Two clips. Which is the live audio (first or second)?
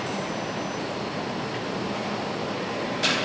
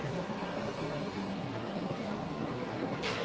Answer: first